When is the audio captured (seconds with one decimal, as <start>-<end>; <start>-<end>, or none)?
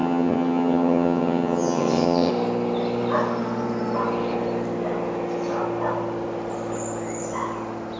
2.3-8.0